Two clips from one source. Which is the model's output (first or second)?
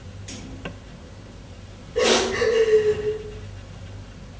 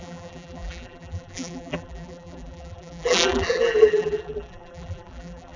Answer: second